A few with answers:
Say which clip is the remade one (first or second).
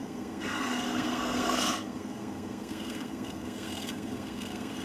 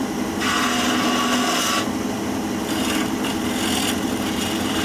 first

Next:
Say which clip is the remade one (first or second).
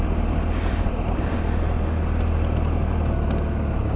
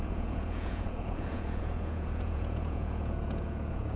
second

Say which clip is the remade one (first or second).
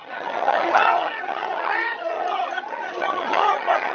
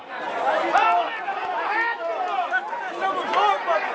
first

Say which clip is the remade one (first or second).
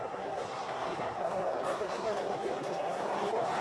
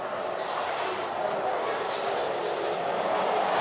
first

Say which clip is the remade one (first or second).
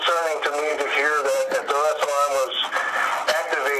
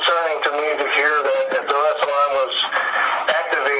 second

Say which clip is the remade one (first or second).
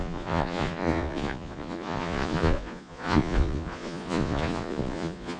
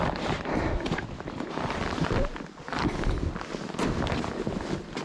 first